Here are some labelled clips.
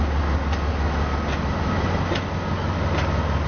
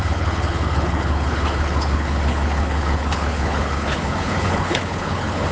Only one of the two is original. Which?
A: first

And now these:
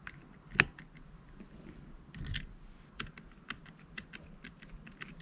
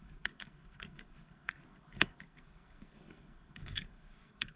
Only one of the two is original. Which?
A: first